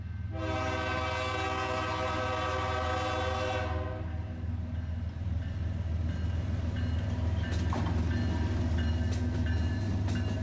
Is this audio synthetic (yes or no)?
no